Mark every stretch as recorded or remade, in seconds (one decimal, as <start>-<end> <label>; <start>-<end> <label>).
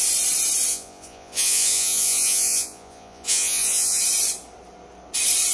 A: 0.0-0.7 recorded; 0.7-4.0 remade; 4.0-5.5 recorded